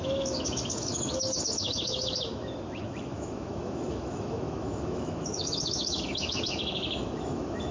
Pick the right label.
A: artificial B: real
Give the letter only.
A